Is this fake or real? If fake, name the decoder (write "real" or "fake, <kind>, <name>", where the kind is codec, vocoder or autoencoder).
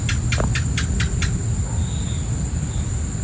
real